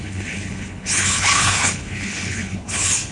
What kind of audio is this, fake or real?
fake